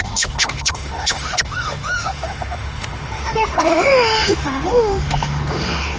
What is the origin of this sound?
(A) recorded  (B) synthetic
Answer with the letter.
B